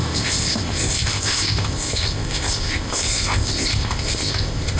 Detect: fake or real fake